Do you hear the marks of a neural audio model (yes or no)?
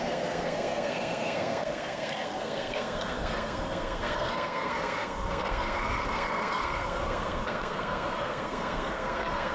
yes